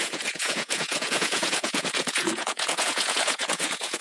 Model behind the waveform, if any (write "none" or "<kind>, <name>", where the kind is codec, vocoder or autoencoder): vocoder, Vocos